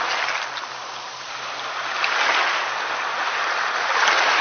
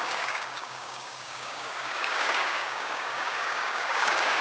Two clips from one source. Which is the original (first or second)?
first